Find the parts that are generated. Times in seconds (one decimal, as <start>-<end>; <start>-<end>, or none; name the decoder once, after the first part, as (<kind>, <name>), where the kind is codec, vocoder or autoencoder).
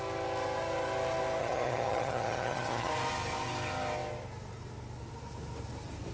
1.4-2.9 (vocoder, HiFi-GAN)